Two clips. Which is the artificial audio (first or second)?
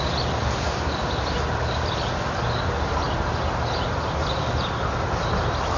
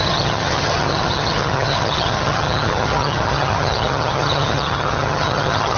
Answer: second